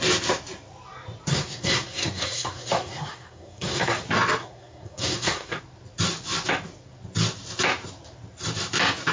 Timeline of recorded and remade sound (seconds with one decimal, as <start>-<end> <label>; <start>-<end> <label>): 0.0-1.3 recorded; 1.3-4.0 remade; 4.0-4.4 recorded; 4.4-5.6 remade; 5.6-9.1 recorded